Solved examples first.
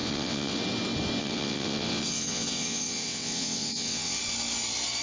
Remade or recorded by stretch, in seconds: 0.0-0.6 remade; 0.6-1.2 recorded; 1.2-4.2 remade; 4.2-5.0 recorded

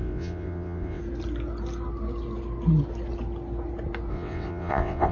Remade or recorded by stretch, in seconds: 0.0-1.0 remade; 1.0-4.1 recorded; 4.1-5.1 remade

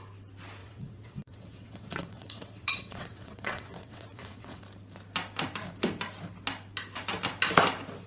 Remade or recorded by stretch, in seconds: 0.0-0.6 recorded; 0.6-4.6 remade; 4.6-8.1 recorded

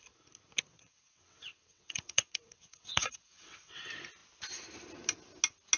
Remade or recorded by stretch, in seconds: 0.0-0.7 recorded; 0.7-3.8 remade; 3.8-5.8 recorded